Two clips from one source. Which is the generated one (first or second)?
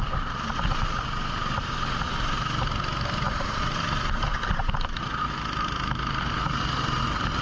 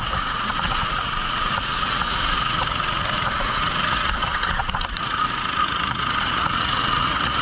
second